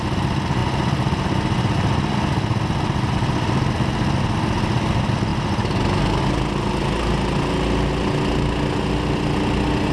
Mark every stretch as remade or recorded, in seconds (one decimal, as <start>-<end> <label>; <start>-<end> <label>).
0.0-9.9 recorded